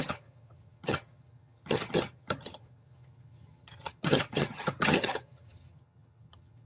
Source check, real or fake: fake